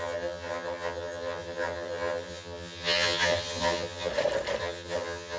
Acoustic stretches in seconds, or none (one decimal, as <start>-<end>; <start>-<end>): 4.1-4.6